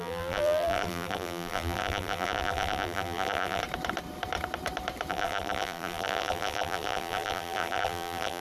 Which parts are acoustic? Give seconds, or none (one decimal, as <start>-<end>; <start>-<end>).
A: 3.6-5.1